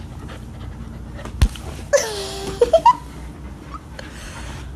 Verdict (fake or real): real